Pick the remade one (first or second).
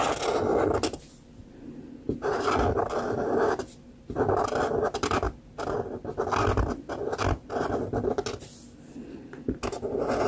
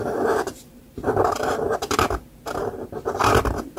second